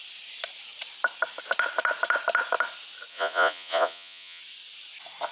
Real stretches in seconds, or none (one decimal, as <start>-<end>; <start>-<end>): 0.0-3.1; 4.4-5.3